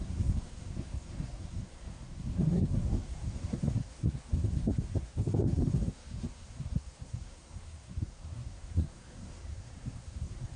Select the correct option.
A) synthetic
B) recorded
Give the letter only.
A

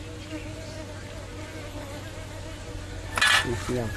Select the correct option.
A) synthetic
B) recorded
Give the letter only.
B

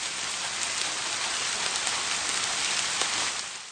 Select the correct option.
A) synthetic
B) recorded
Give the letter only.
B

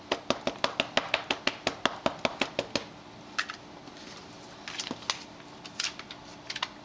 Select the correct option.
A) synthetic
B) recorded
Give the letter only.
B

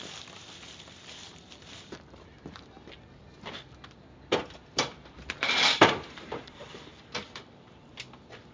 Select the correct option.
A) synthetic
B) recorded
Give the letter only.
A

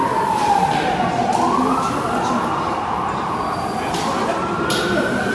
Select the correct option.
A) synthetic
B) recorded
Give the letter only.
B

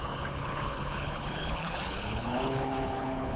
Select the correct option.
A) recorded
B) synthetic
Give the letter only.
B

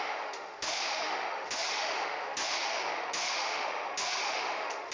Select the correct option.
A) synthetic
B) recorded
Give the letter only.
A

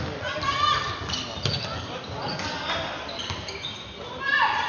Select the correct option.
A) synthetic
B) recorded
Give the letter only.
B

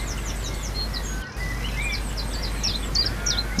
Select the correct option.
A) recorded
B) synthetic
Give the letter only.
A